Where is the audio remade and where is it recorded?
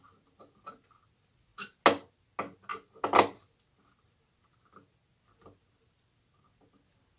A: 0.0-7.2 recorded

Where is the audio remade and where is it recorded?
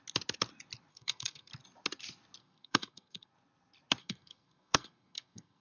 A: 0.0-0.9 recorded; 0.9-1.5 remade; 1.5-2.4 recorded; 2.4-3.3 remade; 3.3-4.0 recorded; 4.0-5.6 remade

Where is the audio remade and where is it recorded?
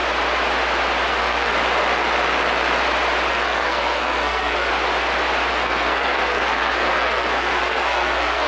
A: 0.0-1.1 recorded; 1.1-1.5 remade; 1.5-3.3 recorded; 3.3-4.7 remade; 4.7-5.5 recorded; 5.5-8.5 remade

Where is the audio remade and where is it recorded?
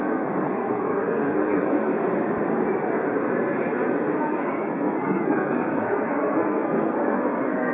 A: 0.0-1.9 remade; 1.9-4.3 recorded; 4.3-7.7 remade